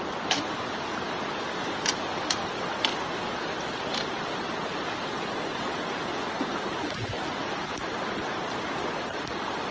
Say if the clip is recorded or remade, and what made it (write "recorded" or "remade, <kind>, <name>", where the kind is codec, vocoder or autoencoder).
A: recorded